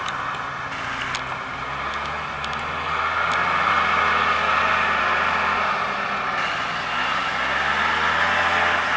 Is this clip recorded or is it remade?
recorded